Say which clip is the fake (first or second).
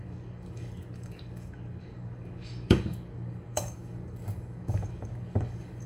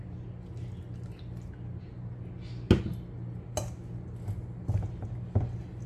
first